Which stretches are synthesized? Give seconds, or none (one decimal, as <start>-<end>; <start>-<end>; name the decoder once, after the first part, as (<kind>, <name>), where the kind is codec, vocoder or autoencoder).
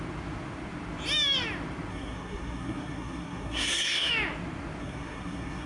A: 1.9-4.1 (codec, SNAC); 4.8-5.7